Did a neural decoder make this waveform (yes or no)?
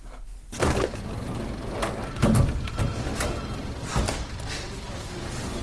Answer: no